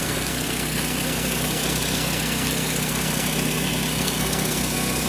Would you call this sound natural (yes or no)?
no